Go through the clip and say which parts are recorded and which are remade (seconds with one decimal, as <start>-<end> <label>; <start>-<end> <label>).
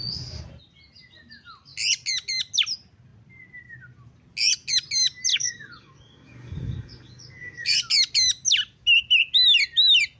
0.0-5.3 recorded; 5.3-7.8 remade; 7.8-10.2 recorded